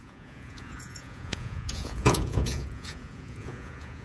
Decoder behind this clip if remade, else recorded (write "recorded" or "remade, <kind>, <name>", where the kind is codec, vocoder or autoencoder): remade, vocoder, Vocos